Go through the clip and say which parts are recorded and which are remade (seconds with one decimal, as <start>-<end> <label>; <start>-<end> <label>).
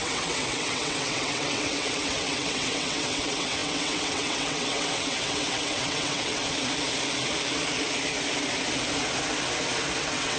0.0-6.4 remade; 6.4-10.0 recorded; 10.0-10.4 remade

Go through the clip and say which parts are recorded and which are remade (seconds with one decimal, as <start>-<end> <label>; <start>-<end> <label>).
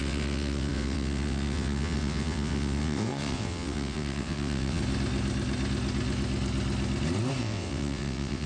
0.0-4.8 remade; 4.8-7.4 recorded; 7.4-8.5 remade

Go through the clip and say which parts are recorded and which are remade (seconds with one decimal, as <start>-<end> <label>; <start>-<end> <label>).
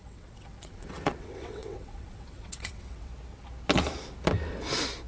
0.0-3.1 remade; 3.1-5.1 recorded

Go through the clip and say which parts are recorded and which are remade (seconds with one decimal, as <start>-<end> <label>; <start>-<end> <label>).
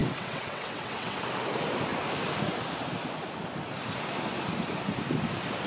0.0-1.2 remade; 1.2-5.7 recorded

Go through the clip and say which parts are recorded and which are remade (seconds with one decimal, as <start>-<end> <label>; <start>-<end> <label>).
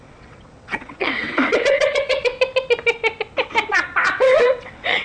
0.0-2.3 remade; 2.3-3.7 recorded; 3.7-5.0 remade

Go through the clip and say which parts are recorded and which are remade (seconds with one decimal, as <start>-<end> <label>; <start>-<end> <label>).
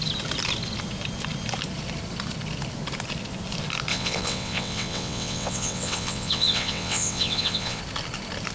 0.0-3.9 recorded; 3.9-7.8 remade; 7.8-8.5 recorded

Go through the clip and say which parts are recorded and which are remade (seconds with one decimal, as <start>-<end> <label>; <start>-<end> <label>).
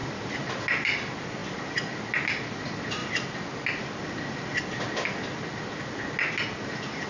0.0-7.1 recorded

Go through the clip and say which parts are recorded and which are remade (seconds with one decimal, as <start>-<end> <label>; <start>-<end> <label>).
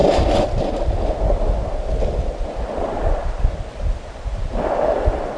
0.0-5.4 recorded